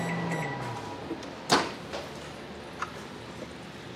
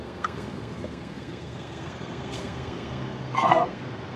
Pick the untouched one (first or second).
first